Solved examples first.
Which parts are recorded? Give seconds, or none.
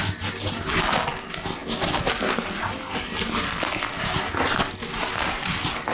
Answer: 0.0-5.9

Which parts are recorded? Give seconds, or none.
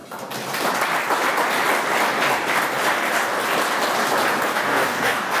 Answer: 0.0-4.5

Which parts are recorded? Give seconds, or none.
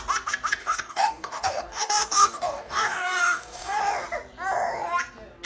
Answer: 0.0-0.6; 3.8-5.4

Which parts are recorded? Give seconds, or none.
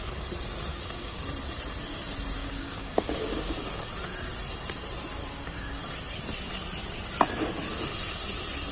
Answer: 0.0-0.7; 1.2-2.4; 3.9-5.2; 5.8-8.7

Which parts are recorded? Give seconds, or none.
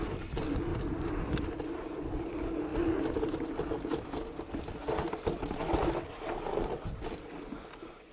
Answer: 0.0-8.1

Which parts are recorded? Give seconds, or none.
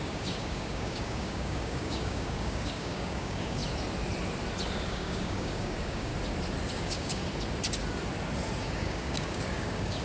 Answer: 3.6-4.9; 6.1-6.7; 7.2-8.6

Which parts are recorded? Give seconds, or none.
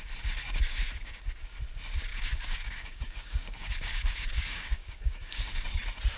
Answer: 0.0-0.4; 1.2-2.1; 5.8-6.2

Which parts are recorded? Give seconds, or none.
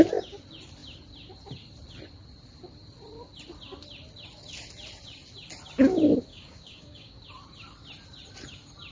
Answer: 0.0-6.3; 7.2-8.9